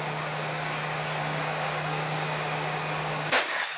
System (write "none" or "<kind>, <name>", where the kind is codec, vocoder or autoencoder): codec, DAC